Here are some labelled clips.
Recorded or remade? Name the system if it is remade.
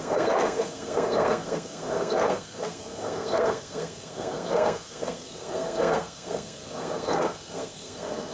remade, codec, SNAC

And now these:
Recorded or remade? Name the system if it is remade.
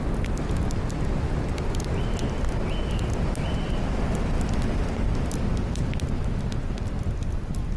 recorded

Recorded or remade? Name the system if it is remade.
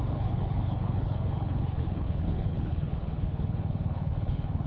remade, codec, HILCodec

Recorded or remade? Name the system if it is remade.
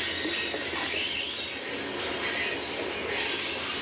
recorded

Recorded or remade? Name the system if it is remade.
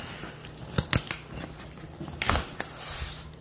remade, vocoder, BigVGAN v2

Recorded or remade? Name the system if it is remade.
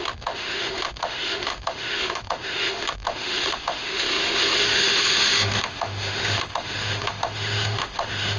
remade, autoencoder, DAC-VAE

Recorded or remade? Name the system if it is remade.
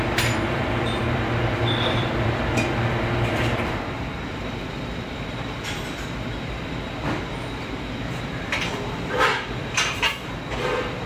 remade, vocoder, BigVGAN v2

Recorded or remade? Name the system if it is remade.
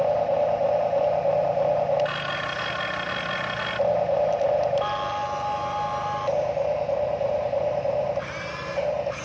recorded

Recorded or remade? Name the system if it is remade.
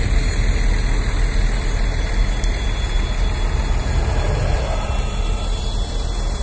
recorded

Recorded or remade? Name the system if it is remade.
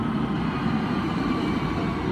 recorded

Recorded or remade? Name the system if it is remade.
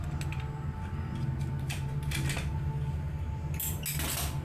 recorded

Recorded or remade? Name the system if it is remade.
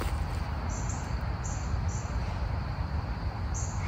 recorded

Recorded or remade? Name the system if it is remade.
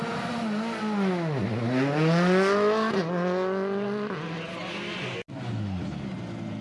recorded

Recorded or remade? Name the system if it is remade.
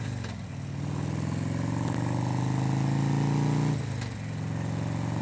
recorded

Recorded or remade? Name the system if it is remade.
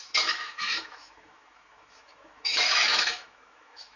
remade, autoencoder, DAC-VAE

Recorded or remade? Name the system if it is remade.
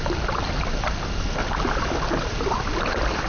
recorded